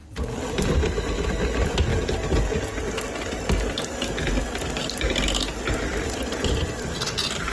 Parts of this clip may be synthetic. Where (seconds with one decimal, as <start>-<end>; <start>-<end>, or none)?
0.0-1.9; 4.3-7.5